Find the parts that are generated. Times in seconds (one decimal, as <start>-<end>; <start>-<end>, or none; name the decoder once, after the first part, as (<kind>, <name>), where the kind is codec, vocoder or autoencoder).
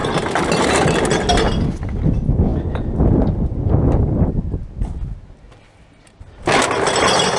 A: none